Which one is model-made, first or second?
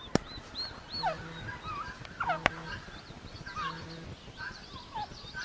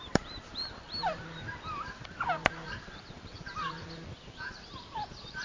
second